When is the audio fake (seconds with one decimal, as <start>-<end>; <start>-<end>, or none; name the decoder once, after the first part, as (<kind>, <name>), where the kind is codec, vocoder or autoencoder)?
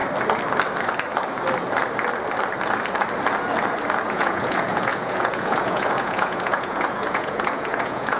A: 4.1-8.2 (vocoder, Vocos)